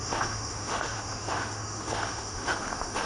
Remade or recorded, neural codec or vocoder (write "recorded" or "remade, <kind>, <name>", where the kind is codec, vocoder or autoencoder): remade, autoencoder, DAC-VAE